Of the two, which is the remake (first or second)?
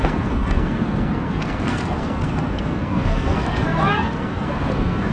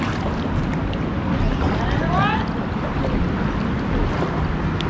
first